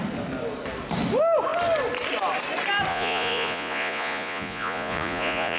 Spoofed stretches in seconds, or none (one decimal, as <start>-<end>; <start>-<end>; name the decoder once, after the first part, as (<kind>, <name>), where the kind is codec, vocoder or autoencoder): 2.9-5.6 (vocoder, Vocos)

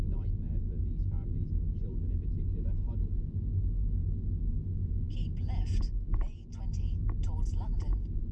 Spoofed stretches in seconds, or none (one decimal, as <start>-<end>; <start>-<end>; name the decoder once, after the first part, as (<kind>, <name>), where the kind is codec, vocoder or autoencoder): none